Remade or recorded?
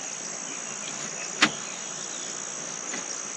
recorded